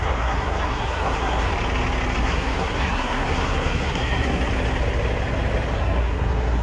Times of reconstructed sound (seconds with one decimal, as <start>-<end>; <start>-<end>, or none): 0.0-1.5; 2.2-4.5; 5.8-6.6